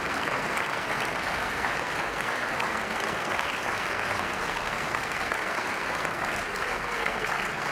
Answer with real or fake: fake